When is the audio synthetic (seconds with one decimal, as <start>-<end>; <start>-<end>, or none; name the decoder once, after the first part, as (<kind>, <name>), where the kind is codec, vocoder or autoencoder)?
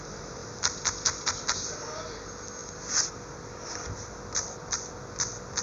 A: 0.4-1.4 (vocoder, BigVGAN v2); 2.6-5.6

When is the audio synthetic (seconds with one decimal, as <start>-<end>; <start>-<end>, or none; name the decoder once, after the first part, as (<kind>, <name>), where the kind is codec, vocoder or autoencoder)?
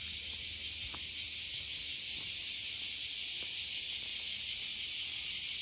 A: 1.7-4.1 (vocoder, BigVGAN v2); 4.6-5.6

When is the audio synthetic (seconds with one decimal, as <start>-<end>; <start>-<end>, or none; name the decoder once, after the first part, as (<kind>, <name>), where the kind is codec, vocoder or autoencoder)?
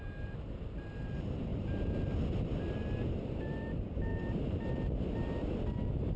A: 1.5-2.2 (vocoder, BigVGAN v2)